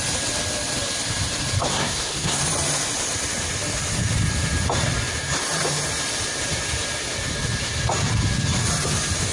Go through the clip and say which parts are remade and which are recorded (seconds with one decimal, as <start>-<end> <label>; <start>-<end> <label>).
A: 0.0-1.7 recorded; 1.7-2.4 remade; 2.4-9.3 recorded